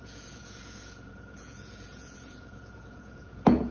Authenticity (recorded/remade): remade